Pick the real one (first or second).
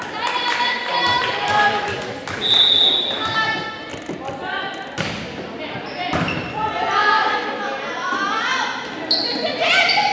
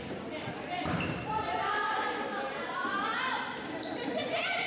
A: first